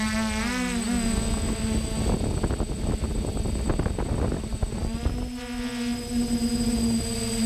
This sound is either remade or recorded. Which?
recorded